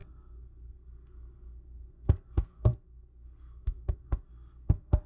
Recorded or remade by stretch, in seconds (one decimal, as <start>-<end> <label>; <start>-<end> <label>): 0.0-5.1 remade